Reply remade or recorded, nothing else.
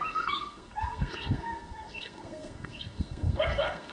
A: remade